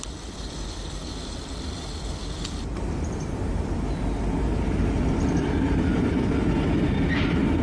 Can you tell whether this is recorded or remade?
remade